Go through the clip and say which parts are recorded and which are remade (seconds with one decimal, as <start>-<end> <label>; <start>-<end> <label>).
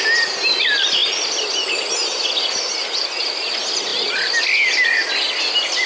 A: 0.0-5.9 recorded